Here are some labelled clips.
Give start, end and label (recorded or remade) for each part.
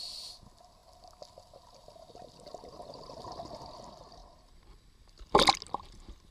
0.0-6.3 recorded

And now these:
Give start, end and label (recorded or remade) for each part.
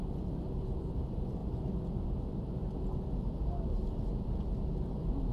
0.0-5.3 recorded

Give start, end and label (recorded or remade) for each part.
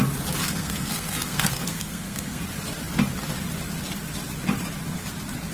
0.0-0.4 recorded; 0.4-2.4 remade; 2.4-5.5 recorded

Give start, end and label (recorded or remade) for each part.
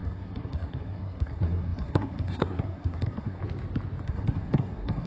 0.0-3.4 remade; 3.4-4.0 recorded; 4.0-5.1 remade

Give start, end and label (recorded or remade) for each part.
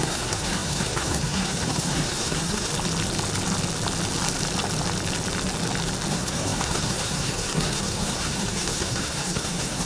0.0-2.7 remade; 2.7-6.1 recorded; 6.1-9.9 remade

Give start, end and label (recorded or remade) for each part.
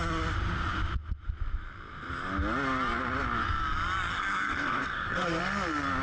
0.0-4.1 recorded; 4.1-5.4 remade; 5.4-6.0 recorded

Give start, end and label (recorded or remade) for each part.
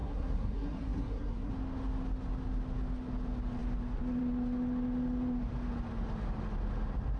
0.0-1.5 remade; 1.5-7.2 recorded